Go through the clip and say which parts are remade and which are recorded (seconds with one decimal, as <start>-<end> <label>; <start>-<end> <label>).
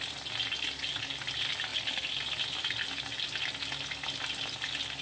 0.0-5.0 recorded